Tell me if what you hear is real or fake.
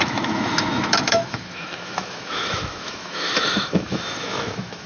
fake